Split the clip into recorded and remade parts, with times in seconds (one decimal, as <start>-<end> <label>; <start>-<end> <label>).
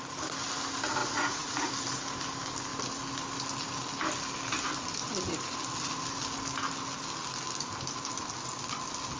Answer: 0.0-1.0 recorded; 1.0-1.7 remade; 1.7-9.2 recorded